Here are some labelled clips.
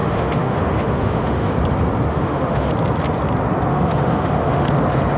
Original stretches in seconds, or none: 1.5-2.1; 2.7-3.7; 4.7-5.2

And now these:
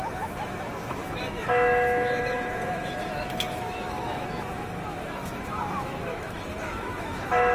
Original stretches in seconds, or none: none

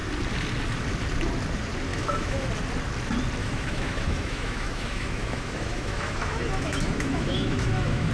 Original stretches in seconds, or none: 0.0-1.9; 2.5-3.4

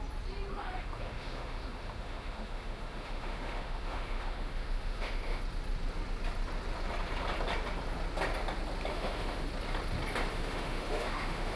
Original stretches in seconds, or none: 0.0-0.5; 5.4-8.9; 9.5-10.3

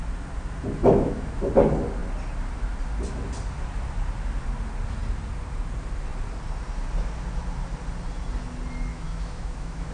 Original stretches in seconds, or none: 0.0-0.8; 1.5-8.9

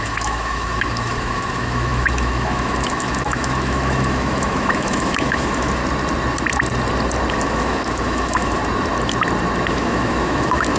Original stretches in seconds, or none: 5.8-7.3; 8.6-9.7